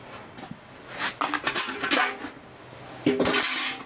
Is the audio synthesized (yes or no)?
no